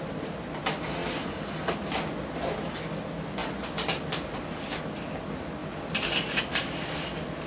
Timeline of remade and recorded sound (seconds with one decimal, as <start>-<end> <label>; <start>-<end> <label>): 0.0-7.5 recorded